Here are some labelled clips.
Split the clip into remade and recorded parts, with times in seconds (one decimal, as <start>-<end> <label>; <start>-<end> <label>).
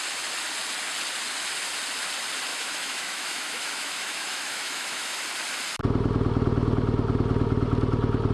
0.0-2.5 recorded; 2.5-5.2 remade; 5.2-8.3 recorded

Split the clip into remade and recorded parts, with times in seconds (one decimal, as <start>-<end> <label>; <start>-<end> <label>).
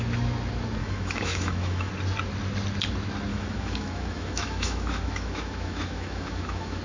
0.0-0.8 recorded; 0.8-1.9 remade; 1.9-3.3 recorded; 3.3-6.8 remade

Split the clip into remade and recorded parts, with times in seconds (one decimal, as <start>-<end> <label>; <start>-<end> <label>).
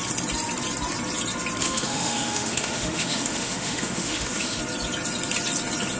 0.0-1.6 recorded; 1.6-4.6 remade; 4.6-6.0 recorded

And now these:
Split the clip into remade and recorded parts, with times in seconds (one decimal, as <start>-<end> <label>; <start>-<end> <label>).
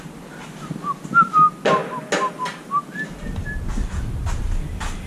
0.0-5.1 recorded